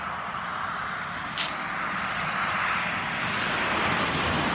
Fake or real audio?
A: real